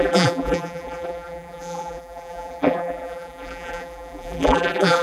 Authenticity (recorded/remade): remade